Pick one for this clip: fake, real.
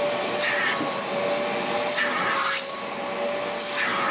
real